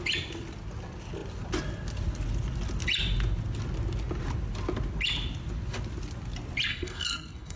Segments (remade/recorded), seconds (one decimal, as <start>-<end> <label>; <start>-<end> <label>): 0.0-6.7 recorded; 6.7-7.6 remade